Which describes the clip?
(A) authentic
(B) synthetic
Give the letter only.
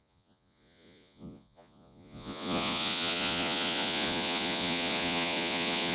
B